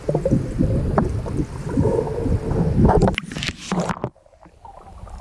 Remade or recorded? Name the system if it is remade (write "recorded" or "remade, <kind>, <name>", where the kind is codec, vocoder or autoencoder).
recorded